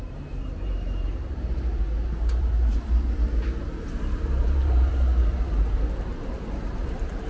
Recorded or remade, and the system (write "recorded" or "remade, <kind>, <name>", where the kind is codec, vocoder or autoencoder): remade, vocoder, BigVGAN v2